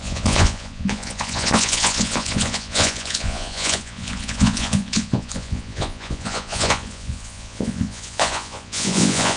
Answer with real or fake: fake